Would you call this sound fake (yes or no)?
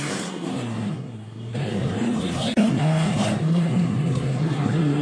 yes